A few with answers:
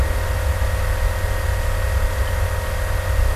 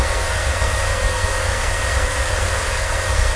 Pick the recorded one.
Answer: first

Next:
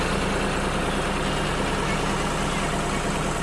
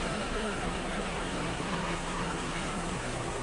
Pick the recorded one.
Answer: first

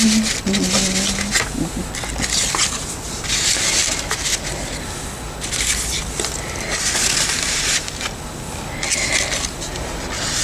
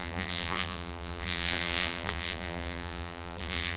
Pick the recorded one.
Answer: first